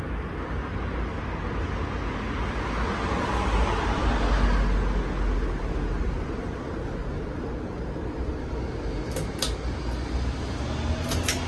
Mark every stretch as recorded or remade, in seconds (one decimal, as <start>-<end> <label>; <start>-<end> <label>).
0.0-11.5 recorded